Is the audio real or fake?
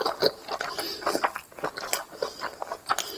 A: real